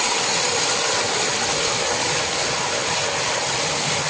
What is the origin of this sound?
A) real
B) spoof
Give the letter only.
A